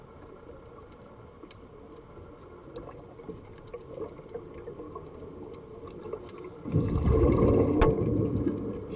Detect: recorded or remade recorded